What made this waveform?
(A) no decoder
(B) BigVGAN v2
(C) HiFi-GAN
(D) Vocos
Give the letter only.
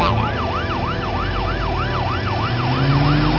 A